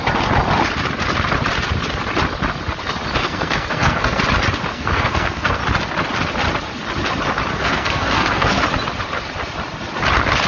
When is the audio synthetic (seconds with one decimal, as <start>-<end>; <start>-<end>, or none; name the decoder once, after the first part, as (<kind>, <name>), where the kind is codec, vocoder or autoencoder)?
3.2-4.2 (codec, SNAC); 4.7-5.6; 7.5-8.6